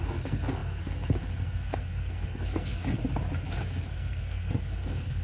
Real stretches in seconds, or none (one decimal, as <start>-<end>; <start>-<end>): 3.0-3.6